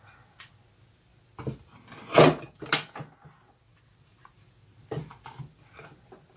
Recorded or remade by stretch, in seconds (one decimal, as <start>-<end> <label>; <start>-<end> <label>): 0.0-6.4 recorded